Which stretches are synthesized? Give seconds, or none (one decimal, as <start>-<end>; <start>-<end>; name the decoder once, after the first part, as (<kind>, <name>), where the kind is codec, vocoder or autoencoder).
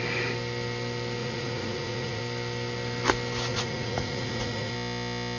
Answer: 1.2-2.2 (vocoder, Vocos); 3.5-4.7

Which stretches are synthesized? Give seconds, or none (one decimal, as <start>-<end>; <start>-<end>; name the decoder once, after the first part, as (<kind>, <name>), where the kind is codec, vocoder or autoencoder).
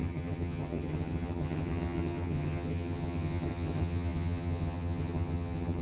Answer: 0.0-5.8 (vocoder, HiFi-GAN)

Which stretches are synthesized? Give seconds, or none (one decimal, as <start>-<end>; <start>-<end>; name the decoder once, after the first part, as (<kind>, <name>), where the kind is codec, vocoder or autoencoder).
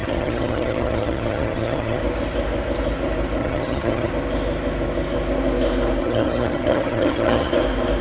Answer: 0.0-2.0 (vocoder, HiFi-GAN); 3.4-4.1; 6.0-7.5